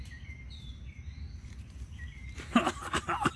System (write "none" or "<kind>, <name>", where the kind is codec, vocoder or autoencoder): vocoder, BigVGAN v2